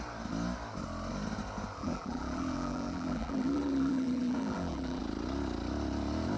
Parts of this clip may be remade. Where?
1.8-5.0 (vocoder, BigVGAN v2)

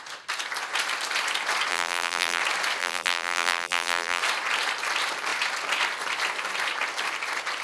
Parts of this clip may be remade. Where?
1.7-2.4 (vocoder, BigVGAN v2); 2.8-4.2

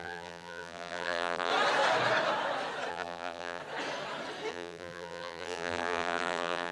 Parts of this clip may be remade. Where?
0.0-1.5 (vocoder, BigVGAN v2); 2.9-3.6; 4.5-6.7